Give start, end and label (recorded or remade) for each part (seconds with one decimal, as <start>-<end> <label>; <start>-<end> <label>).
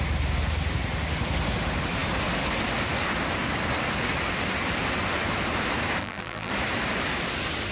0.0-6.0 recorded; 6.0-6.5 remade; 6.5-7.7 recorded